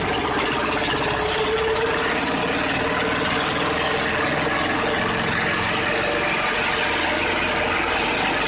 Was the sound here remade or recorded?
recorded